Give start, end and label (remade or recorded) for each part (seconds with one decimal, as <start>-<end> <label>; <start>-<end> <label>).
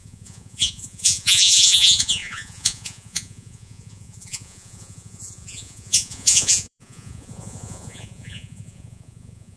0.0-9.6 remade